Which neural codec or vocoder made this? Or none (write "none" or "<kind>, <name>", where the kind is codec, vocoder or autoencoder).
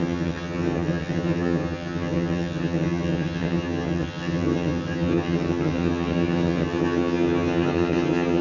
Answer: vocoder, HiFi-GAN